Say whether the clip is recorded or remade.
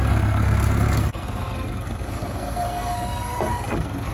remade